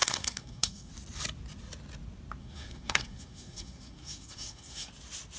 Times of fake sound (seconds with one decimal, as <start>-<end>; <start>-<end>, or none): 0.0-0.9; 2.4-4.9